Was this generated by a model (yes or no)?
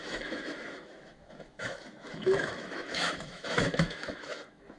yes